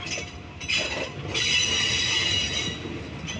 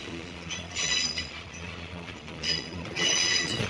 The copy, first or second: second